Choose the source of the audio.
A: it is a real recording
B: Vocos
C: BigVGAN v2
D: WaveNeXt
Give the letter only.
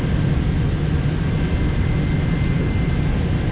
A